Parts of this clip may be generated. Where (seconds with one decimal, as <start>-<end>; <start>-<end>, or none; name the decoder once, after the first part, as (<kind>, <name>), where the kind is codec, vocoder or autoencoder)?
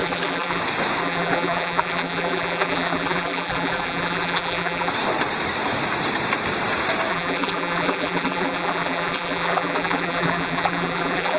0.0-0.6 (vocoder, BigVGAN v2); 1.0-4.9; 7.1-11.4